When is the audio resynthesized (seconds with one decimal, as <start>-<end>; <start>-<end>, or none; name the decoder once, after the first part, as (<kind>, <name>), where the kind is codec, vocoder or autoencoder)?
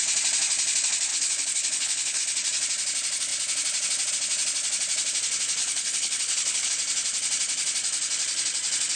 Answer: 1.1-2.2 (codec, HILCodec); 5.6-6.7